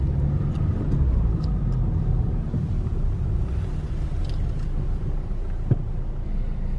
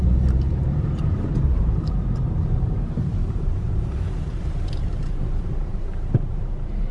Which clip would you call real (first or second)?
first